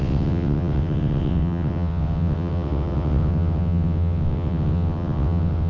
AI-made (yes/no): yes